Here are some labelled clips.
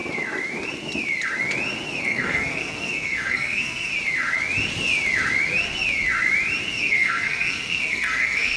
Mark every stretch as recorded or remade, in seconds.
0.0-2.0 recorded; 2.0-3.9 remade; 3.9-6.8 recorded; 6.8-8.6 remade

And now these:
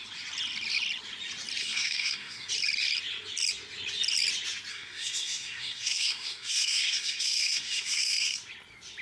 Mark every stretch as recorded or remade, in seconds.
0.0-1.6 recorded; 1.6-2.5 remade; 2.5-4.7 recorded; 4.7-8.4 remade; 8.4-9.0 recorded